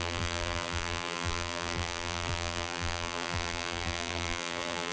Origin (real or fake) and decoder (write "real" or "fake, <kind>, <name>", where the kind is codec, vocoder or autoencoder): fake, vocoder, BigVGAN v2